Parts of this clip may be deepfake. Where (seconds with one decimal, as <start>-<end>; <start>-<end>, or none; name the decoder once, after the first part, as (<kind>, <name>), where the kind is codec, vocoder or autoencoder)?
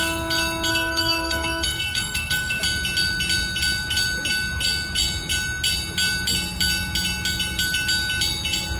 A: 0.7-2.6 (codec, SNAC)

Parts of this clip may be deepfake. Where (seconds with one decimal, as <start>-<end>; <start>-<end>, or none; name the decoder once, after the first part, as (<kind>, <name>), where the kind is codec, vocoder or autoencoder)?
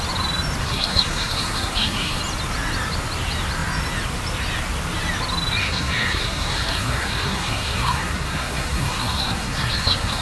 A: 0.6-2.2 (codec, SNAC); 5.6-10.2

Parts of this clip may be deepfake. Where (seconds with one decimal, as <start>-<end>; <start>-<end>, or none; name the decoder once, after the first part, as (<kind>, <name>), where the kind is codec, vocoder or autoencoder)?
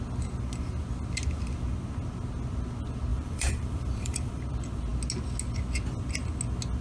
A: 3.1-4.4 (vocoder, BigVGAN v2)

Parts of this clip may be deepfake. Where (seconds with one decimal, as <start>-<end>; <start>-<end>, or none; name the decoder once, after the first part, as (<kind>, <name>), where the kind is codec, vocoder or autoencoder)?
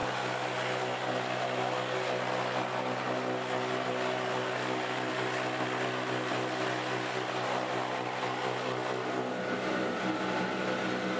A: none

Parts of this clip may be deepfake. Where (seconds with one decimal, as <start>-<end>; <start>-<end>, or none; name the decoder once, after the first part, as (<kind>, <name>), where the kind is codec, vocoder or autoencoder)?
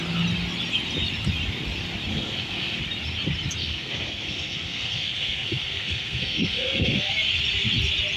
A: 2.1-2.8 (codec, SNAC); 3.6-7.1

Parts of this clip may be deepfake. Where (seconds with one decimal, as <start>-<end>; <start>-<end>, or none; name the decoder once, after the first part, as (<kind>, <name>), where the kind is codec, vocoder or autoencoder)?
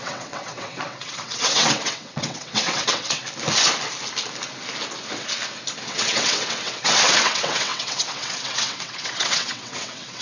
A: 0.0-3.2 (vocoder, WaveNeXt); 5.8-10.2